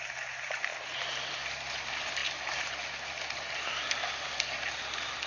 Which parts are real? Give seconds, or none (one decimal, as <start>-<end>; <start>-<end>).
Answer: 0.7-1.3; 2.2-3.1